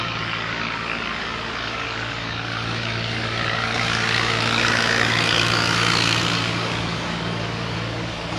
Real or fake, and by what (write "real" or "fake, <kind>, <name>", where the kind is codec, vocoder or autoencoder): fake, codec, DAC